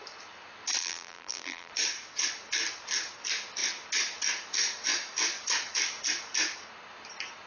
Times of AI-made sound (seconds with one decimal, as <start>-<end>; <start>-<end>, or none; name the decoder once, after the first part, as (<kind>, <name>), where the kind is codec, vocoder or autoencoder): 0.8-1.7 (vocoder, BigVGAN v2)